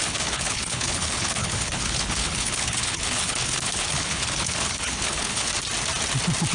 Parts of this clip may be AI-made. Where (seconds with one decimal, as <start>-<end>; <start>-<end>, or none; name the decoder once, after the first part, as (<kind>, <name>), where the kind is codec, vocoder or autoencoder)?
0.0-5.5 (codec, HILCodec)